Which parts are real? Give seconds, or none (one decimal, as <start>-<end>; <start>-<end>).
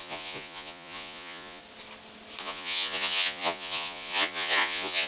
1.6-2.4